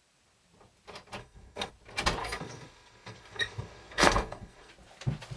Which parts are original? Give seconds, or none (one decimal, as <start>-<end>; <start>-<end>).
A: 0.0-1.2; 1.7-2.2; 4.7-5.4